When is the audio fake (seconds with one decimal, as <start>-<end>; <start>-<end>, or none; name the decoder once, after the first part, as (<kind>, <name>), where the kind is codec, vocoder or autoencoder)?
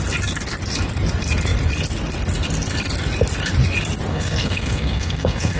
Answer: 4.1-5.6 (codec, SNAC)